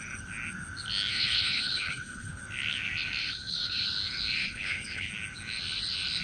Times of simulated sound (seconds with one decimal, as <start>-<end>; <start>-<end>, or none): 1.1-2.4; 3.2-3.8; 4.4-5.1

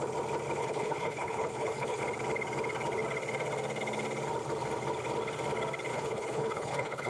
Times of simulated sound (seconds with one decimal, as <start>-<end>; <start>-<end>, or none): 0.6-2.0; 5.9-7.1

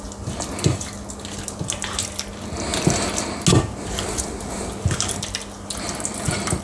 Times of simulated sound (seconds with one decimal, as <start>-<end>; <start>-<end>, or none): none

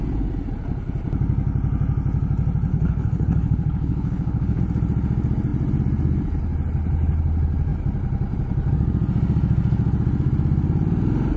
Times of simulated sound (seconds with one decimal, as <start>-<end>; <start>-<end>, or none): 2.7-4.6

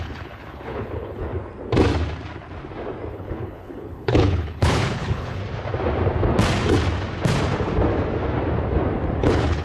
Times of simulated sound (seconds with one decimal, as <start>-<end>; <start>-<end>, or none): 0.0-1.3; 3.1-5.4; 9.2-9.6

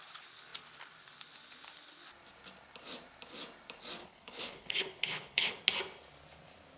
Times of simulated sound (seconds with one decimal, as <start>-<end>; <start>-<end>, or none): 4.0-5.6

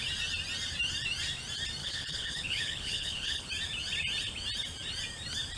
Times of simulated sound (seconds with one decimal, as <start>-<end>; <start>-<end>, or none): 1.8-3.5